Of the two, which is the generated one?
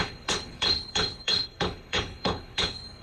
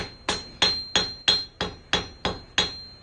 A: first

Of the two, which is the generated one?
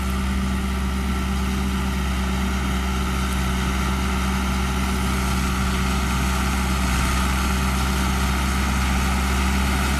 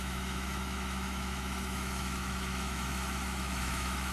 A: second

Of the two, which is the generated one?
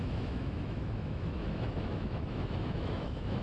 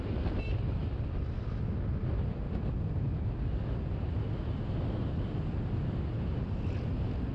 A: first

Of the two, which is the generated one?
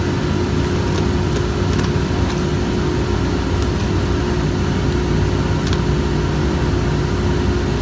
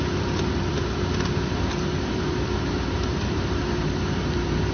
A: second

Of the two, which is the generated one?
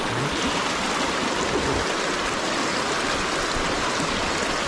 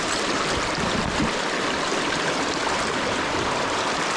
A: second